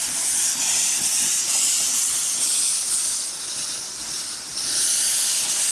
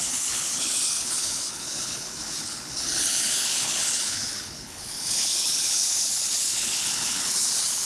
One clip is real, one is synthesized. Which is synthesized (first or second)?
second